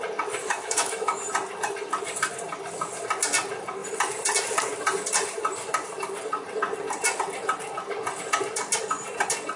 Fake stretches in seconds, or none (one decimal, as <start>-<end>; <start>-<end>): 0.4-1.2